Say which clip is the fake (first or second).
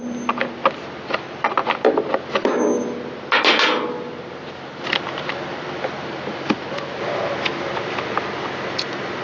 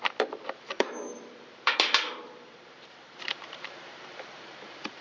second